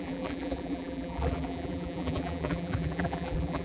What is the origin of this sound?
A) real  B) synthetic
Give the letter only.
B